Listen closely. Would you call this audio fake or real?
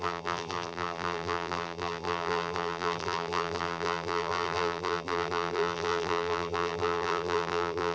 fake